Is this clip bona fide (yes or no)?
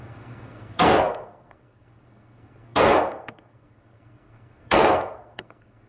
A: no